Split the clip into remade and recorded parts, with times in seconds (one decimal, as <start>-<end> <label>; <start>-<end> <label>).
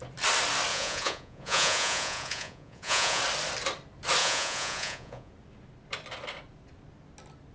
0.0-0.7 recorded; 0.7-3.2 remade; 3.2-4.2 recorded; 4.2-5.3 remade; 5.3-7.5 recorded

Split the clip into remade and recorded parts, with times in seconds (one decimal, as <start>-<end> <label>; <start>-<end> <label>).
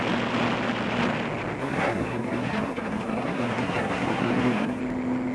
0.0-1.6 recorded; 1.6-4.8 remade; 4.8-5.3 recorded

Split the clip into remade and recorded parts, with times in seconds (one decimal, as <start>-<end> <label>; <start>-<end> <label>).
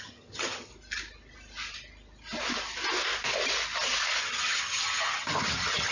0.0-0.7 remade; 0.7-4.2 recorded; 4.2-5.9 remade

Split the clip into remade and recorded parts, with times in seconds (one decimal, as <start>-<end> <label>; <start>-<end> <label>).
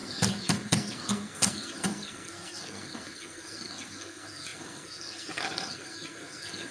0.0-6.7 remade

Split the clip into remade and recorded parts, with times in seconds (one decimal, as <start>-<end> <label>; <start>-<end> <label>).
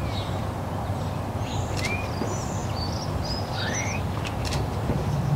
0.0-5.4 recorded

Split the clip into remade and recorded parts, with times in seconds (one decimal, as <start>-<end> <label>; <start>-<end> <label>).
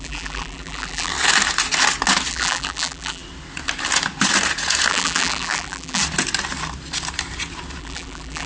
0.0-1.1 remade; 1.1-2.3 recorded; 2.3-3.2 remade; 3.2-4.9 recorded; 4.9-6.0 remade; 6.0-7.8 recorded; 7.8-8.5 remade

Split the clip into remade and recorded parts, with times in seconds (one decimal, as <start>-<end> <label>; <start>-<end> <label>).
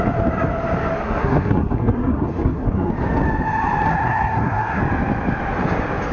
0.0-1.0 recorded; 1.0-2.9 remade; 2.9-3.9 recorded; 3.9-4.8 remade; 4.8-6.1 recorded